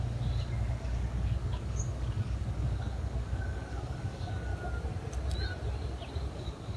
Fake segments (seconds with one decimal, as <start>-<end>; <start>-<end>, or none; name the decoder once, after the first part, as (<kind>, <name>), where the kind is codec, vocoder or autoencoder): 0.0-4.5 (codec, DAC); 6.3-6.8